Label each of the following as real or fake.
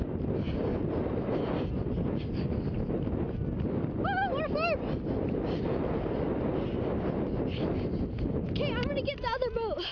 real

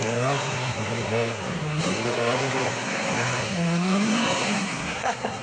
fake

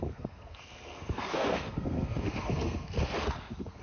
fake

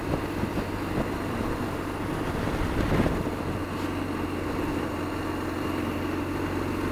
real